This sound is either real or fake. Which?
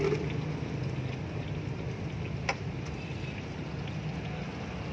real